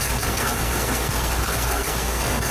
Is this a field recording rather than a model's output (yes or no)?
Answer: no